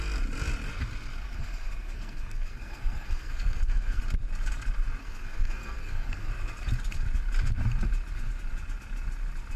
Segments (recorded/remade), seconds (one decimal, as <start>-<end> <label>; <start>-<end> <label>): 0.0-1.2 recorded; 1.2-4.0 remade; 4.0-5.0 recorded; 5.0-6.3 remade; 6.3-9.6 recorded